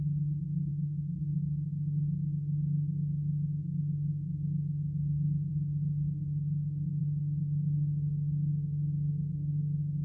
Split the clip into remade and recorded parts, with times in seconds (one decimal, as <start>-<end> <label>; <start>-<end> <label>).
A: 0.0-0.7 recorded; 0.7-1.2 remade; 1.2-5.5 recorded; 5.5-7.0 remade; 7.0-10.0 recorded